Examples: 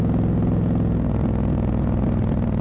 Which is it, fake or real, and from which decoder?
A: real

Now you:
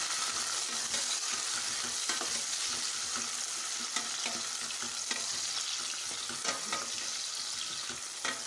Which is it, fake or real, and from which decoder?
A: real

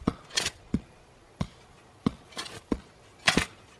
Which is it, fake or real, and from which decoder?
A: fake, vocoder, Vocos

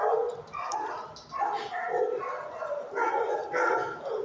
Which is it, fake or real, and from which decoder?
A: real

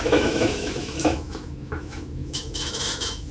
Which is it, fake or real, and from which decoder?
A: fake, autoencoder, DAC-VAE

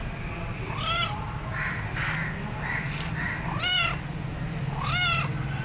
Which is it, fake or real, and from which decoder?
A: real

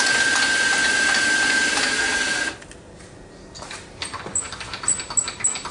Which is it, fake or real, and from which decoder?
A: real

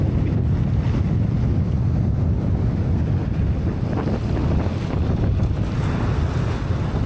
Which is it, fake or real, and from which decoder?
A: real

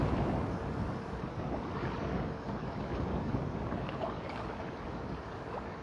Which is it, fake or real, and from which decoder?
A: fake, codec, DAC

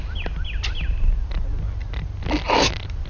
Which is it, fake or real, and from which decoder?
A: real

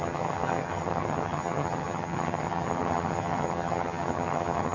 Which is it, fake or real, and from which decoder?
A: fake, vocoder, HiFi-GAN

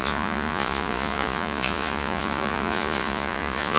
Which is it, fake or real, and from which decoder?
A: fake, vocoder, Vocos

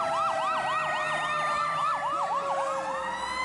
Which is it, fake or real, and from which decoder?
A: real